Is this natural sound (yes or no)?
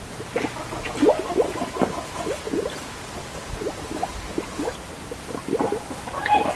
yes